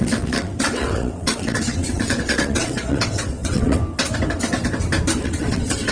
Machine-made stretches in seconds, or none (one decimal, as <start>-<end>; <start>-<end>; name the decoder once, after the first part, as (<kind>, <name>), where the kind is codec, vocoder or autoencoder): 0.0-3.8 (vocoder, WaveNeXt); 5.2-5.9